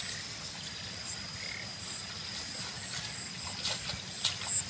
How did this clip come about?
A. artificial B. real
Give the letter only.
B